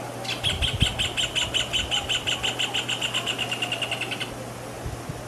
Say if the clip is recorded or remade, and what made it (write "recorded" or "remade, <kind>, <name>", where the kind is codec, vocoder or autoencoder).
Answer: recorded